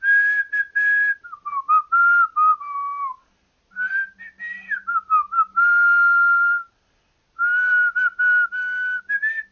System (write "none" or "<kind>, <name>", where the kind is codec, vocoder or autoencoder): none